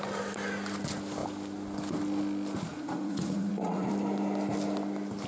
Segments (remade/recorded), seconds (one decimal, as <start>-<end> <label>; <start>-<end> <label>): 0.0-2.7 recorded; 2.7-3.9 remade; 3.9-5.3 recorded

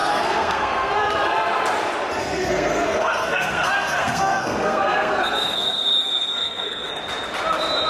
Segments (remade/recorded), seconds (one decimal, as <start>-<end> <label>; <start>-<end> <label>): 0.0-0.9 remade; 0.9-2.2 recorded; 2.2-6.9 remade; 6.9-7.9 recorded

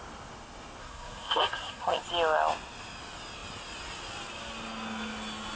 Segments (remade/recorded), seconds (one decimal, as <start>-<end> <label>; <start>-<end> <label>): 0.0-0.8 recorded; 0.8-2.0 remade; 2.0-5.6 recorded

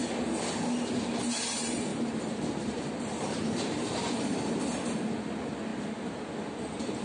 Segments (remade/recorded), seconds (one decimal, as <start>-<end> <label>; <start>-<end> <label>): 0.0-1.9 recorded; 1.9-4.6 remade; 4.6-7.0 recorded

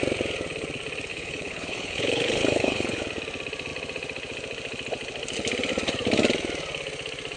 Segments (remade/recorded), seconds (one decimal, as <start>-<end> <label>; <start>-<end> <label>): 0.0-1.1 recorded; 1.1-3.0 remade; 3.0-7.4 recorded

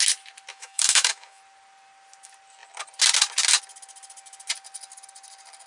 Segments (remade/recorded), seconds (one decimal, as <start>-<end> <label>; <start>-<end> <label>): 0.0-0.5 recorded; 0.5-1.4 remade; 1.4-5.7 recorded

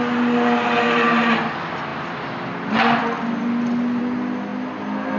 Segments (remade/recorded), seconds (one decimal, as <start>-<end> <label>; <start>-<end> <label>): 0.0-5.2 recorded

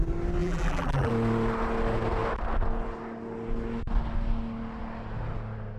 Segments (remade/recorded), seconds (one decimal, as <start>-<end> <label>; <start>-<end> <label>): 0.0-0.4 recorded; 0.4-1.1 remade; 1.1-5.8 recorded